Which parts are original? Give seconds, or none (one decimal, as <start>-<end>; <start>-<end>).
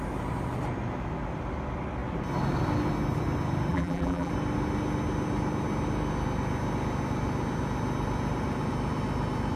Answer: 0.0-3.7; 4.3-9.6